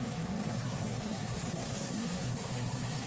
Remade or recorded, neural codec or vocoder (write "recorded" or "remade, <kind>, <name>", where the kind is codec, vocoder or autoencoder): remade, codec, SNAC